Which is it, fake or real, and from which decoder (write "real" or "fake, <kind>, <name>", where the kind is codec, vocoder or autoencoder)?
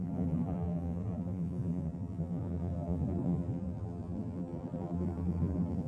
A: fake, vocoder, BigVGAN v2